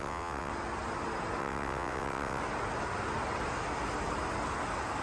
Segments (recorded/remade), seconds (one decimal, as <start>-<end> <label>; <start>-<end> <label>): 0.0-0.5 remade; 0.5-1.4 recorded; 1.4-2.4 remade; 2.4-5.0 recorded